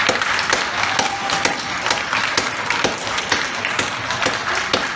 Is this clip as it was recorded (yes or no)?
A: yes